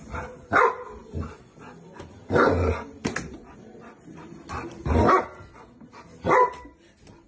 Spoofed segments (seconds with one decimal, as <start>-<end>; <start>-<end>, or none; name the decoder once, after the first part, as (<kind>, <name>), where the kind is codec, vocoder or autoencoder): none